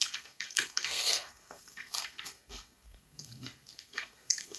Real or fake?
fake